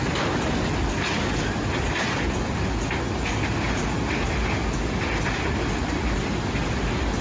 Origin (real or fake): real